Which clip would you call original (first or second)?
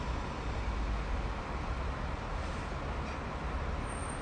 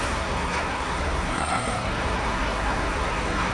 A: first